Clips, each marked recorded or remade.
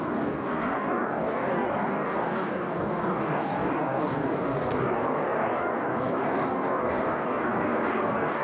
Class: remade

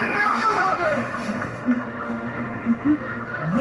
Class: remade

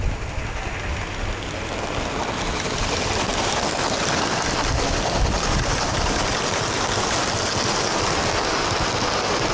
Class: recorded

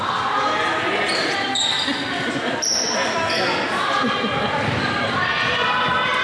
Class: recorded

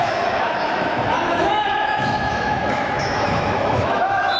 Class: remade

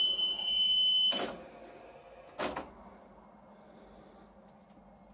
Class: recorded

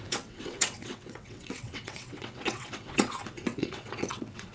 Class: remade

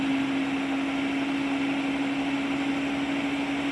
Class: recorded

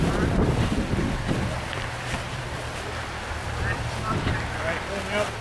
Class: remade